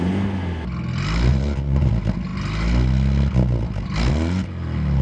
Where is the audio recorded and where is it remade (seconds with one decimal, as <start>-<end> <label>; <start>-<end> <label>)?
0.0-1.3 recorded; 1.3-1.9 remade; 1.9-5.0 recorded